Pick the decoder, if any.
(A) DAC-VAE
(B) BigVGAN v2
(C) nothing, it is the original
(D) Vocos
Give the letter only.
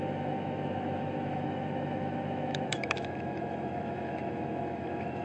A